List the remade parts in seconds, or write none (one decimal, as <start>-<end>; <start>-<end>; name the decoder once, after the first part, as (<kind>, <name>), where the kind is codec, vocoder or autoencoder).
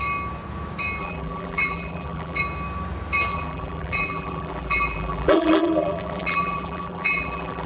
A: 1.0-2.4 (vocoder, BigVGAN v2); 3.3-7.7